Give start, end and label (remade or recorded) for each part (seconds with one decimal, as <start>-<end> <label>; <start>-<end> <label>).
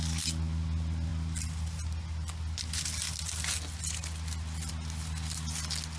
0.0-6.0 recorded